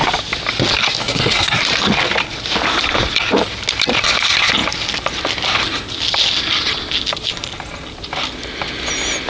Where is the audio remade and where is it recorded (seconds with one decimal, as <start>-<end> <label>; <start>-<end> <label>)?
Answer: 0.0-1.0 recorded; 1.0-1.6 remade; 1.6-9.3 recorded